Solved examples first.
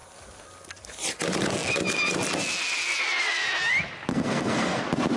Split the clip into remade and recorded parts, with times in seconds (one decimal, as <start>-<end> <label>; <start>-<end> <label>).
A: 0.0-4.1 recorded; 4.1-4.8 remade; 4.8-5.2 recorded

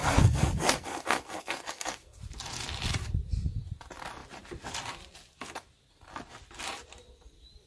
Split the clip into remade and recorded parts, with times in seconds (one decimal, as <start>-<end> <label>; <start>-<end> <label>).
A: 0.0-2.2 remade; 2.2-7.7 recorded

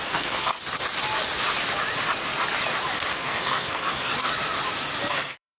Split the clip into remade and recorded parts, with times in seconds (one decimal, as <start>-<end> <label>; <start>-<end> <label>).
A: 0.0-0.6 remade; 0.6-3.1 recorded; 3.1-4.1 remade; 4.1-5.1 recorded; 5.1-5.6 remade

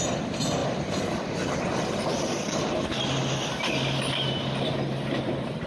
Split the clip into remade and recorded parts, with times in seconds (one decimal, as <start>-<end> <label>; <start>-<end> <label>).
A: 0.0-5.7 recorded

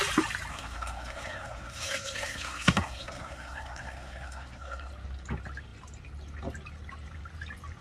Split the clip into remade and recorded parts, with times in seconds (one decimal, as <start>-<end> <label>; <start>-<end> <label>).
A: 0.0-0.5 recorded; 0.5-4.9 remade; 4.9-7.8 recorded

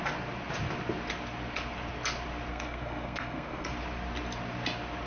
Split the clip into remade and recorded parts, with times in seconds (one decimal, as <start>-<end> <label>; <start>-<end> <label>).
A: 0.0-2.5 recorded; 2.5-3.7 remade; 3.7-5.1 recorded